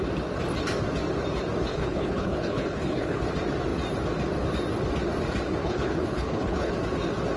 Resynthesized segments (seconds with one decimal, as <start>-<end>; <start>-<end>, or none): 1.7-3.2; 5.6-6.7